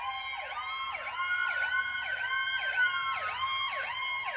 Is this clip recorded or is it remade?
recorded